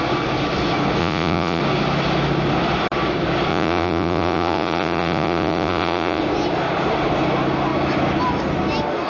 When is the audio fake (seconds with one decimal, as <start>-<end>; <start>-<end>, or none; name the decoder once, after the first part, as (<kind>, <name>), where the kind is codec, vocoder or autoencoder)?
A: 1.0-1.6 (vocoder, Vocos); 3.5-6.2